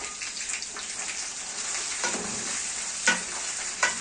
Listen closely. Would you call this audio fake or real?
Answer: real